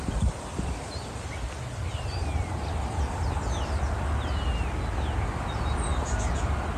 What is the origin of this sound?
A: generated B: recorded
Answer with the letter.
B